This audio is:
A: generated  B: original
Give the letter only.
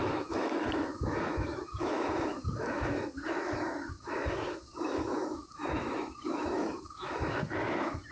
A